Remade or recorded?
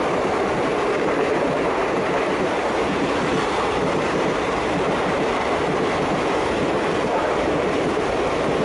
remade